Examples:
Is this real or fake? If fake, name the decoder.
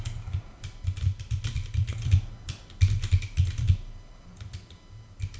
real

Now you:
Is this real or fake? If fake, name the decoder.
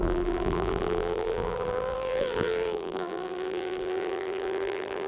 fake, vocoder, BigVGAN v2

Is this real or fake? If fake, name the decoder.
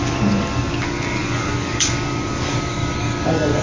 fake, codec, DAC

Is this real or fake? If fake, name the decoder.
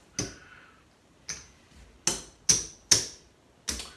real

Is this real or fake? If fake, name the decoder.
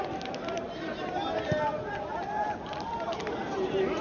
real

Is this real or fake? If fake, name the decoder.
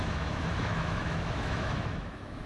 fake, autoencoder, DAC-VAE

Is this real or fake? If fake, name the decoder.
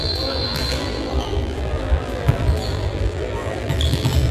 fake, vocoder, BigVGAN v2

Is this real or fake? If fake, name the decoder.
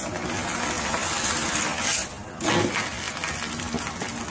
real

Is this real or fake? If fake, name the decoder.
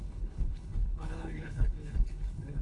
fake, codec, HILCodec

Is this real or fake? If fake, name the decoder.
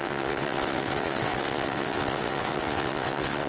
fake, vocoder, WaveNeXt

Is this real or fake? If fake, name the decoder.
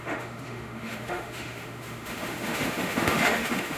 fake, autoencoder, DAC-VAE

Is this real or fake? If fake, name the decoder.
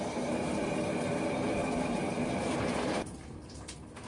fake, vocoder, BigVGAN v2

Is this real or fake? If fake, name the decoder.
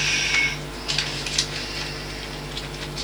real